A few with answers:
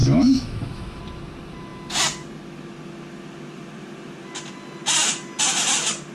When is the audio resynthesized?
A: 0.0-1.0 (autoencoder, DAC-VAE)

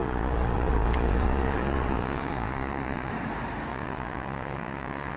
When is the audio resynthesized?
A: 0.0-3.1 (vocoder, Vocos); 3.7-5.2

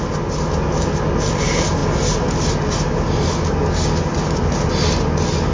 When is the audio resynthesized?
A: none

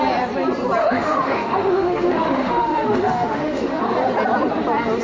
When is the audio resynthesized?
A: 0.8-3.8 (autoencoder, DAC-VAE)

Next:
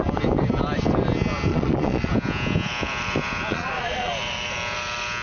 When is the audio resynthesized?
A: 1.5-2.1 (vocoder, Vocos); 3.5-4.1

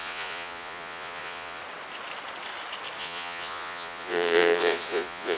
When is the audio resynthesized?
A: 0.0-1.6 (vocoder, Vocos); 3.0-5.4